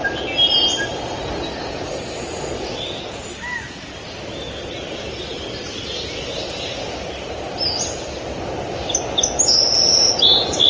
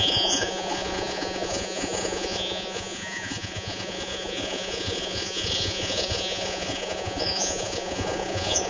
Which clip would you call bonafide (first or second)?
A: first